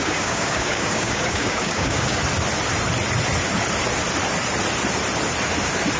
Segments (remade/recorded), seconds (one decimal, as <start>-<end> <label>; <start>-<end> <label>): 0.0-2.2 remade; 2.2-6.0 recorded